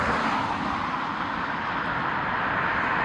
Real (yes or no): yes